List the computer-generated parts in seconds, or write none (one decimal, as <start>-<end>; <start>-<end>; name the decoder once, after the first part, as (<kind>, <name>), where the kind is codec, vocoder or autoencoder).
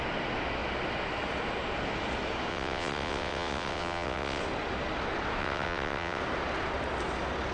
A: 2.5-4.4 (vocoder, WaveNeXt); 5.4-6.2